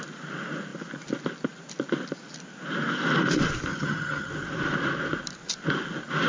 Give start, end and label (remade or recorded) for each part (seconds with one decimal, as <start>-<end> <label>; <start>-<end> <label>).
0.0-3.7 recorded; 3.7-4.3 remade; 4.3-6.3 recorded